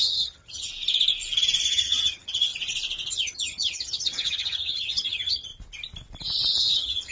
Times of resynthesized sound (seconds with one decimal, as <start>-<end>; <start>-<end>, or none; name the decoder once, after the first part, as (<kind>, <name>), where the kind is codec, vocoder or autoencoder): 0.0-0.7 (vocoder, HiFi-GAN); 1.6-2.5; 3.1-5.5; 6.6-7.1